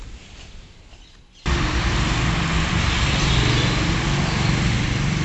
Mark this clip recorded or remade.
recorded